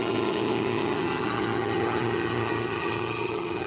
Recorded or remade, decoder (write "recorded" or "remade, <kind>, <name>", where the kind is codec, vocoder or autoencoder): remade, vocoder, HiFi-GAN